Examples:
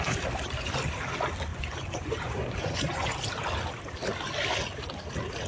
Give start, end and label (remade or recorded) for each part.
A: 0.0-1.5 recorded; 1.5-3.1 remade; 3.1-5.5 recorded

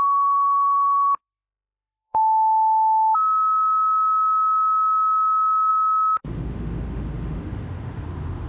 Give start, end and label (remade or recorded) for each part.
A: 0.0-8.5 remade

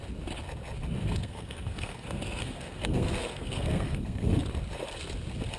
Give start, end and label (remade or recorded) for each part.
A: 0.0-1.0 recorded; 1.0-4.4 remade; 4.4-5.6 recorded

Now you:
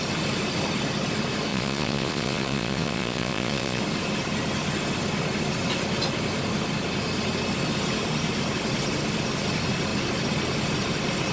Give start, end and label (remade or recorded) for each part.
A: 0.0-1.5 recorded; 1.5-3.8 remade; 3.8-11.3 recorded

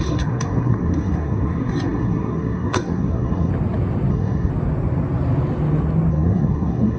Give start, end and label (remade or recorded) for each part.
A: 0.0-3.5 remade; 3.5-4.1 recorded; 4.1-4.5 remade; 4.5-6.1 recorded; 6.1-7.0 remade

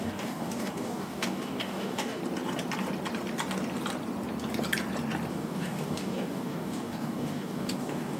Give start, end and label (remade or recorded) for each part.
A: 0.0-2.2 remade; 2.2-5.3 recorded; 5.3-8.2 remade

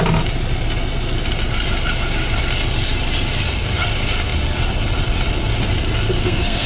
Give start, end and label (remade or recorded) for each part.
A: 0.0-6.2 recorded; 6.2-6.7 remade

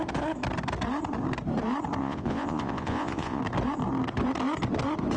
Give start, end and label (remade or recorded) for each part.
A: 0.0-2.0 recorded; 2.0-3.4 remade; 3.4-5.2 recorded